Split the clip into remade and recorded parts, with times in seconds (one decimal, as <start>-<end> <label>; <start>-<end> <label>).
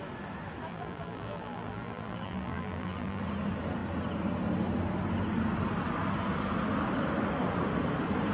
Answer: 0.0-0.7 recorded; 0.7-3.2 remade; 3.2-8.3 recorded